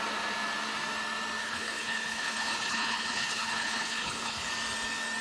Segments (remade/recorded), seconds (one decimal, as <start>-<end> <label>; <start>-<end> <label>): 0.0-1.4 recorded; 1.4-4.5 remade; 4.5-5.2 recorded